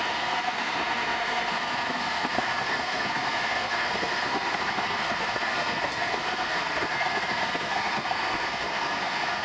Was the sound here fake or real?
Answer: fake